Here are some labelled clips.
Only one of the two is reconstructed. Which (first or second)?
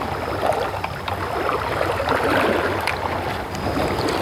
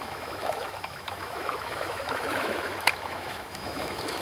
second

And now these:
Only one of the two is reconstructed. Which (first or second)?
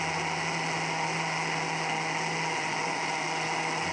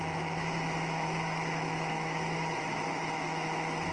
second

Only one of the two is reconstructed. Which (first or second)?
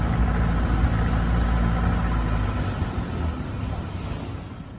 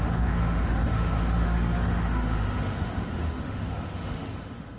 second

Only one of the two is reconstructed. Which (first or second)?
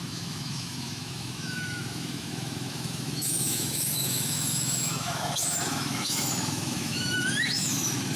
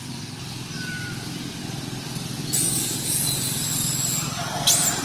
first